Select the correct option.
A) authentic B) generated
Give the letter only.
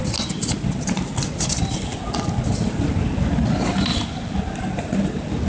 A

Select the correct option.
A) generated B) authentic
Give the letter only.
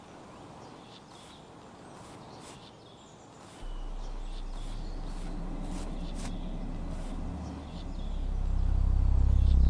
B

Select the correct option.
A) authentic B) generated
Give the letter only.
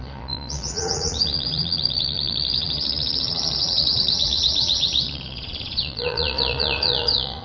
B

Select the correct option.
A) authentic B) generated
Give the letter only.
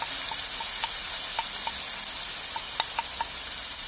A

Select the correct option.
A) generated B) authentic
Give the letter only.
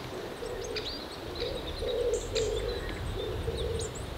B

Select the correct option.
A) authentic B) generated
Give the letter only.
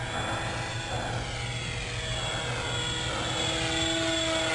A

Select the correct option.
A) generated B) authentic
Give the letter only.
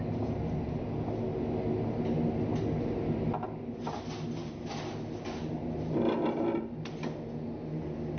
B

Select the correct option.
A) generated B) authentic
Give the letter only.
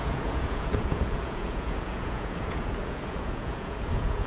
A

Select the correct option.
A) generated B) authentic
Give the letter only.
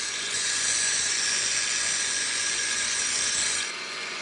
A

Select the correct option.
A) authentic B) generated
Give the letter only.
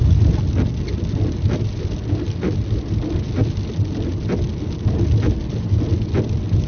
A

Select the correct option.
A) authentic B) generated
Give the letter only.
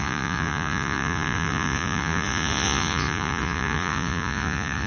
B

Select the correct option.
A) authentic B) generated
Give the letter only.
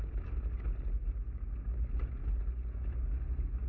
A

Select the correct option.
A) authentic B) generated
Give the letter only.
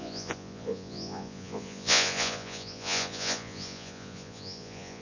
B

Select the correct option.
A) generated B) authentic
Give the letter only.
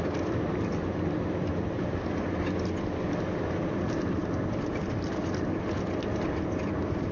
B